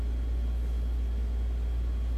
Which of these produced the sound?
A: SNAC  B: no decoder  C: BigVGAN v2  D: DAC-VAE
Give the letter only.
B